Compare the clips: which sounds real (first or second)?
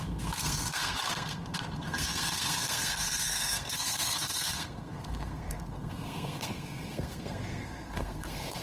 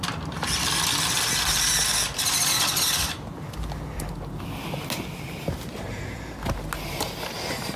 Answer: second